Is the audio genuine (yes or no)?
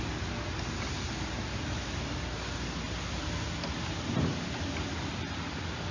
yes